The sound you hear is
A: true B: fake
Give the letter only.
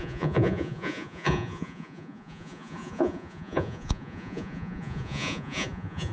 B